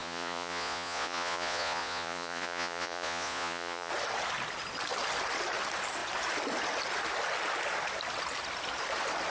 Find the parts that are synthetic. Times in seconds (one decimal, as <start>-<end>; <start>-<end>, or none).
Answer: 0.0-3.9